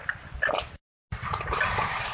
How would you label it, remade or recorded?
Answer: recorded